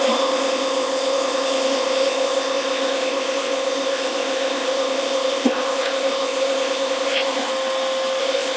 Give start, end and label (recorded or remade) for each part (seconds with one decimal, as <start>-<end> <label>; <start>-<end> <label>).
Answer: 0.0-7.5 remade; 7.5-8.2 recorded; 8.2-8.6 remade